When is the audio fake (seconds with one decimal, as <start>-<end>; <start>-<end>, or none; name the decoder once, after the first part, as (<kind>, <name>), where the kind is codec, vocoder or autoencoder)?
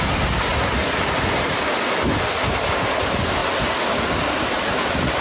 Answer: none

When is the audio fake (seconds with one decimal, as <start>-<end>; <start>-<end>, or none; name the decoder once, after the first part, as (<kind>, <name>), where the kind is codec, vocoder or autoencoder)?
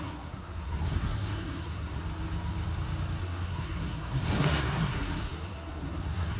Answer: 0.0-2.0 (codec, SNAC); 3.2-6.4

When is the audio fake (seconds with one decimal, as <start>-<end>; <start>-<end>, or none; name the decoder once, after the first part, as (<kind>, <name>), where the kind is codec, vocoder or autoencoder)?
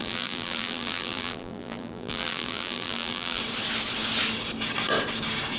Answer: 0.0-3.4 (vocoder, BigVGAN v2)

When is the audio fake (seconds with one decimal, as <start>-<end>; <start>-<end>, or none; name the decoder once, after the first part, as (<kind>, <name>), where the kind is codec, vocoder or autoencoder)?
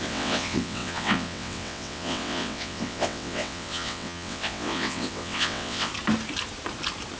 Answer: 0.0-5.9 (vocoder, WaveNeXt)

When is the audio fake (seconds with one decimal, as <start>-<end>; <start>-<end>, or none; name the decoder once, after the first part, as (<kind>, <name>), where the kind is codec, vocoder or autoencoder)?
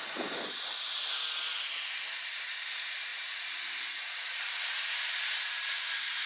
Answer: none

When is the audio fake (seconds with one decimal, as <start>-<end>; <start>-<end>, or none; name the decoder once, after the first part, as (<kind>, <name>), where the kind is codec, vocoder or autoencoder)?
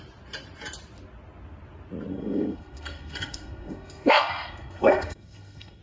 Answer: 2.1-5.8 (codec, SNAC)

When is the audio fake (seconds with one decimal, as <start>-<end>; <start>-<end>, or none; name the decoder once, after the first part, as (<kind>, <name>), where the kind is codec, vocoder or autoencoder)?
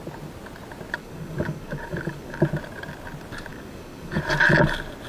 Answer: 1.0-2.4 (codec, DAC); 3.5-4.2